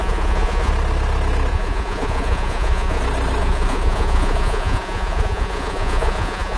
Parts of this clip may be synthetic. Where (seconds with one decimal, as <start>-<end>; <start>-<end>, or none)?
0.0-0.7; 1.5-3.0; 3.4-6.6